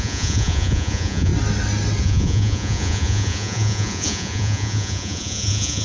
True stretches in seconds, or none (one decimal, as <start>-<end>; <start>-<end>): 1.3-2.0

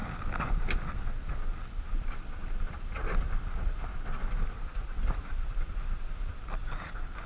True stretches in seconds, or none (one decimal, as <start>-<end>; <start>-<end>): 0.0-7.3

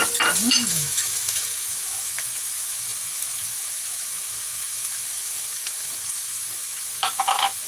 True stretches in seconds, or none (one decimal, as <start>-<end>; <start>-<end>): 0.0-0.5

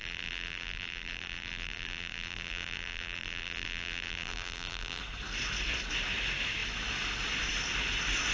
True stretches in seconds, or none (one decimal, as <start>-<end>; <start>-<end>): 5.0-8.3

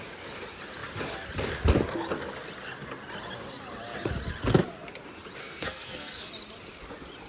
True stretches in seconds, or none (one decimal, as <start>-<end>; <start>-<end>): 0.0-5.4; 6.3-7.3

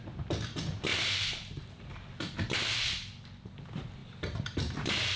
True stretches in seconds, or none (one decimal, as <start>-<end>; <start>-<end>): 0.0-5.2